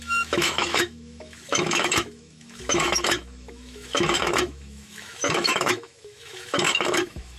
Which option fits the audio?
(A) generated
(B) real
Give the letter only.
A